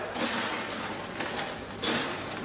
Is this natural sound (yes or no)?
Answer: yes